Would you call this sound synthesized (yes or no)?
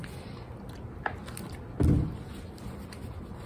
no